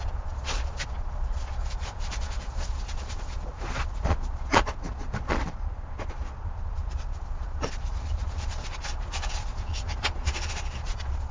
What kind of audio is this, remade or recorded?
remade